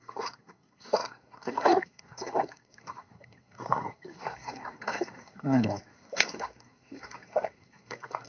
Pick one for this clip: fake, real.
fake